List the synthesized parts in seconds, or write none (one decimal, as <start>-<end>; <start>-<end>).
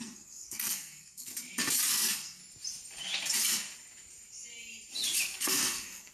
0.0-1.3; 1.9-2.4; 5.4-6.1